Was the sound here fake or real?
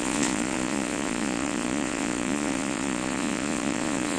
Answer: fake